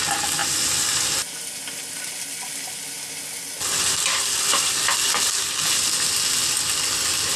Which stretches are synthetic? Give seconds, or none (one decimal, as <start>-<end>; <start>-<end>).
none